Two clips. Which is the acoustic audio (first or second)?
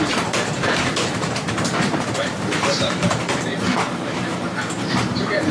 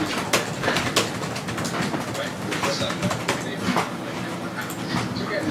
second